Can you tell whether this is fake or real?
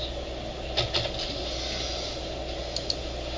real